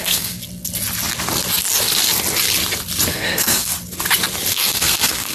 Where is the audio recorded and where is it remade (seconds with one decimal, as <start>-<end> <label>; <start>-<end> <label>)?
0.0-0.4 remade; 0.4-3.1 recorded; 3.1-3.7 remade; 3.7-4.5 recorded; 4.5-5.3 remade

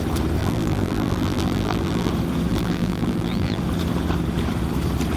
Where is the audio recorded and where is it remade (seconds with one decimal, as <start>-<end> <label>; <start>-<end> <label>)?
0.0-0.4 recorded; 0.4-2.1 remade; 2.1-2.5 recorded; 2.5-3.6 remade; 3.6-5.2 recorded

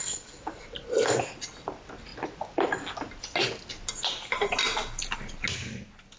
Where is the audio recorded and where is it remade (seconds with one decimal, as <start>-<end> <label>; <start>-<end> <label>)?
0.0-6.2 recorded

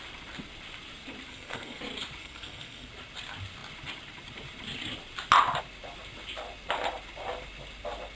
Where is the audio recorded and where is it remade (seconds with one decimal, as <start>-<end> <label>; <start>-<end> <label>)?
0.0-1.3 recorded; 1.3-1.8 remade; 1.8-2.2 recorded; 2.2-2.9 remade; 2.9-8.2 recorded